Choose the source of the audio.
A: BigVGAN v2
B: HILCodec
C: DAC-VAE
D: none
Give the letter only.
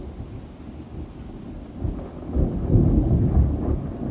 D